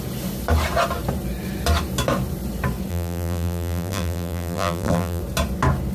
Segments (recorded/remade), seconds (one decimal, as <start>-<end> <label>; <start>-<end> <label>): 0.0-2.9 recorded; 2.9-5.2 remade; 5.2-5.9 recorded